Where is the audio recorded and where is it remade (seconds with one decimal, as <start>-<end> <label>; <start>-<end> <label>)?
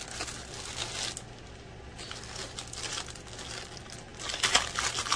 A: 0.0-5.2 recorded